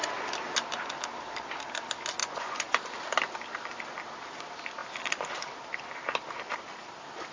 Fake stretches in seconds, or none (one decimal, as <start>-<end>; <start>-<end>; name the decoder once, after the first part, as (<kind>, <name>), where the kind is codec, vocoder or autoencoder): 2.2-2.8 (vocoder, Vocos)